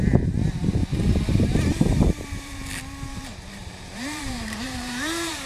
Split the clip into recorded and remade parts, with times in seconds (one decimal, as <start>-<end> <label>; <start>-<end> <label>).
0.0-2.6 remade; 2.6-3.1 recorded; 3.1-5.5 remade